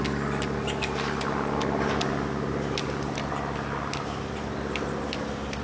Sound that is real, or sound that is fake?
real